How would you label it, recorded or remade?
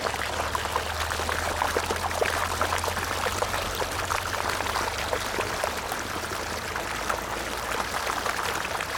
recorded